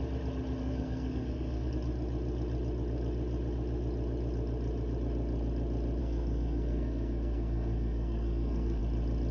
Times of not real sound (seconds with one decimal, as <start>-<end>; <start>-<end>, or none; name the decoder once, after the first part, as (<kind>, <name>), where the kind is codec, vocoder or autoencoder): 0.6-1.7 (codec, SNAC); 6.0-8.8